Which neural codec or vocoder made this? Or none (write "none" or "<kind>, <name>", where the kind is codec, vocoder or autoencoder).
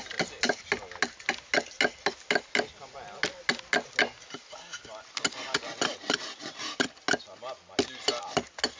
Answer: none